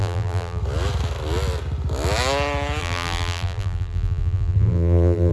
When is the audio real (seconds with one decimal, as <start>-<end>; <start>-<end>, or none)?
0.6-2.8